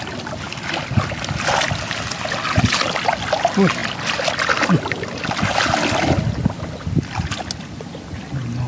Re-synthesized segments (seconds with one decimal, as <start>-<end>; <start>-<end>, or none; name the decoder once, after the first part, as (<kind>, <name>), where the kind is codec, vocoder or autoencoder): none